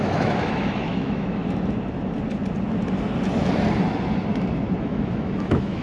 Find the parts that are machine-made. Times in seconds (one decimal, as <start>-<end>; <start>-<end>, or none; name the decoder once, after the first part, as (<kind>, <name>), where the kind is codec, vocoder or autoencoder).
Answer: 0.0-1.4 (autoencoder, DAC-VAE); 4.8-5.8